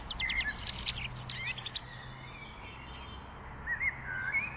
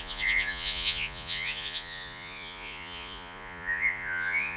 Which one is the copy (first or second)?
second